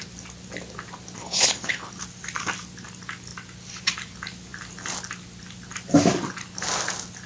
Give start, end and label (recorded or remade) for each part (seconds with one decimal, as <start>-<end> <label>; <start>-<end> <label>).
0.0-1.2 recorded; 1.2-1.9 remade; 1.9-7.3 recorded